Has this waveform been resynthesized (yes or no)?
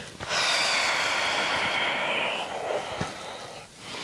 no